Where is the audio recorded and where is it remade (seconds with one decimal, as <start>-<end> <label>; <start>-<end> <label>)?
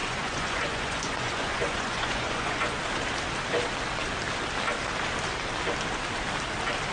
0.0-2.8 remade; 2.8-6.9 recorded